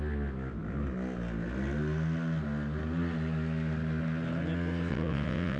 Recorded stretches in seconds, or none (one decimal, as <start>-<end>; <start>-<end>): 0.0-4.9